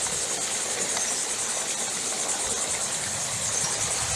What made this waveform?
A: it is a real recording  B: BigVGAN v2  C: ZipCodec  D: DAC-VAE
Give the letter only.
A